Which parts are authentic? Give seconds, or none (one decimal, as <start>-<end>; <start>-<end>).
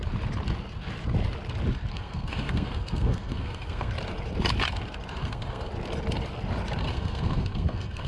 0.0-1.9; 3.9-5.2; 5.7-6.8